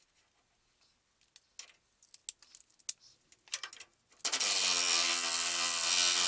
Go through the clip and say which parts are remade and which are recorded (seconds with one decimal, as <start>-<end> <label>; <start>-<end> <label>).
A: 0.0-6.3 recorded